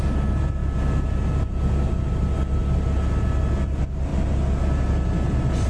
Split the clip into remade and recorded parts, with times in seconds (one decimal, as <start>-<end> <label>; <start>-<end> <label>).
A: 0.0-5.7 recorded